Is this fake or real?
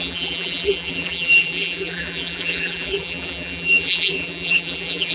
fake